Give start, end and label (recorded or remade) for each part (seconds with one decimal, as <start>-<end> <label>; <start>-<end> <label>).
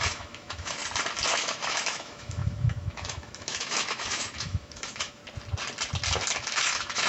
0.0-0.8 remade; 0.8-1.3 recorded; 1.3-5.2 remade; 5.2-6.4 recorded; 6.4-7.1 remade